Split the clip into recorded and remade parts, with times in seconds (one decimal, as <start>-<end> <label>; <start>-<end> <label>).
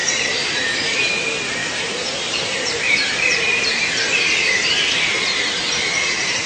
0.0-1.1 remade; 1.1-1.6 recorded; 1.6-2.8 remade; 2.8-6.5 recorded